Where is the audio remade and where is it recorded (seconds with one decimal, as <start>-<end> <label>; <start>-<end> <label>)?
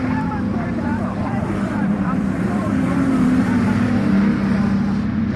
0.0-1.2 recorded; 1.2-3.4 remade; 3.4-5.4 recorded